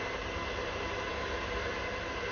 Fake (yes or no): no